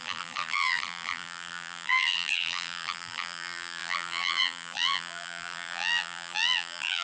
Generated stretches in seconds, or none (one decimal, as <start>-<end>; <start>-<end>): 0.0-7.0